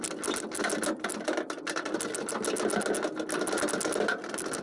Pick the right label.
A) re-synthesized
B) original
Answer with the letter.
B